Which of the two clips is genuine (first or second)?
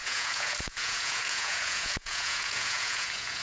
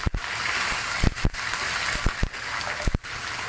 second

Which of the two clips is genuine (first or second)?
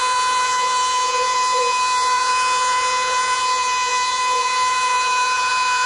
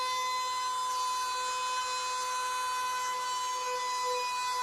second